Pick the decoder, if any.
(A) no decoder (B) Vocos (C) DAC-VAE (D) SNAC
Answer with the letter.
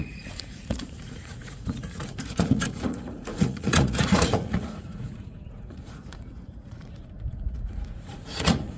B